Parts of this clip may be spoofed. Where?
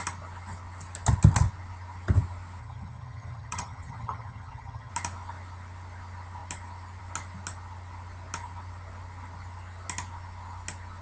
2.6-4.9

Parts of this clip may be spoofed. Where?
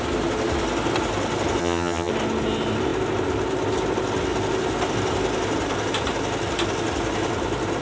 1.6-2.1